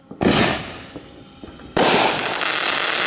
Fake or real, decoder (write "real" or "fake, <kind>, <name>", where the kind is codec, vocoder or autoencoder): real